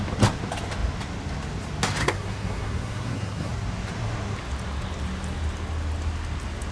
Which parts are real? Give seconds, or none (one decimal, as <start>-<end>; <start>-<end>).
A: 0.0-2.0; 3.5-6.7